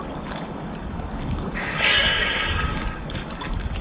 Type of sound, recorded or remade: remade